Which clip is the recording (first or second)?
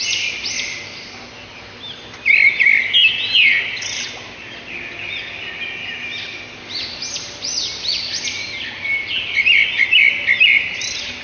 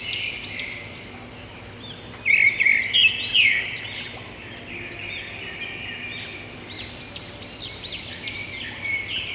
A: first